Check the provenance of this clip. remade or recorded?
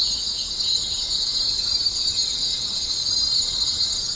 recorded